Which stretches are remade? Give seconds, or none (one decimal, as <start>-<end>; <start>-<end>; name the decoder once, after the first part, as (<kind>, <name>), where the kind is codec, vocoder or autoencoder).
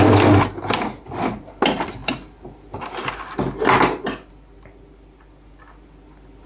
none